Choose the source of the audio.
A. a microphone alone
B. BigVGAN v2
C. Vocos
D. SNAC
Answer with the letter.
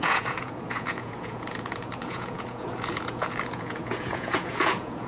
C